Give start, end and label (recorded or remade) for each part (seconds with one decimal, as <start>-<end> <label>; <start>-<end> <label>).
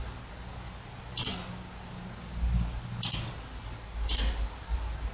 0.0-5.1 recorded